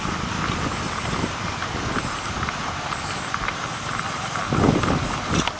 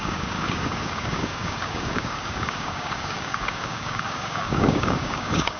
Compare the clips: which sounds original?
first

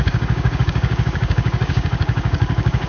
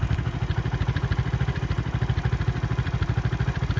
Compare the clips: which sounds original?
second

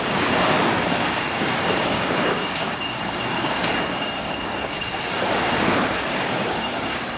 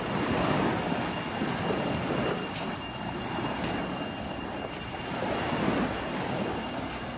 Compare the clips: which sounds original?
second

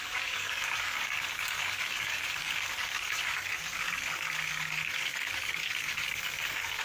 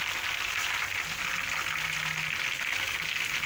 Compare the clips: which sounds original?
second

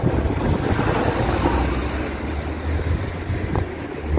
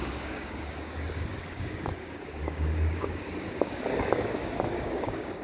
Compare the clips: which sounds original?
first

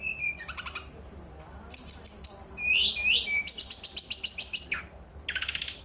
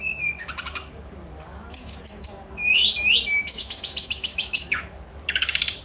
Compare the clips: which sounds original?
first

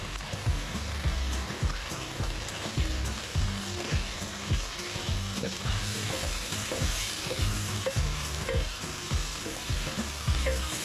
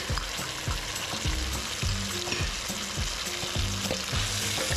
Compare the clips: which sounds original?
second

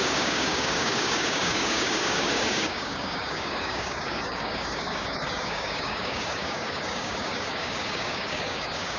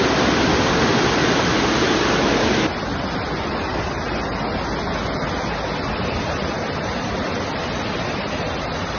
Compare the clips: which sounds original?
second